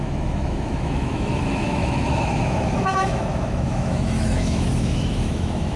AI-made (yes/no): yes